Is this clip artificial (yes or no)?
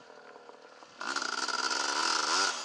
no